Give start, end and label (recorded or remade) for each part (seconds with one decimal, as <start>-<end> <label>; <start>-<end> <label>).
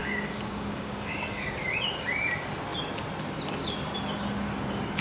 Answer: 0.0-1.4 remade; 1.4-5.0 recorded